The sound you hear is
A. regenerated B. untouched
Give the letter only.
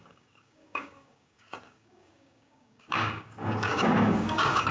A